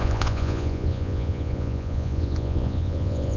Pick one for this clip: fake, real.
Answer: fake